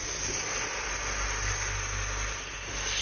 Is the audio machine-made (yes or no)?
no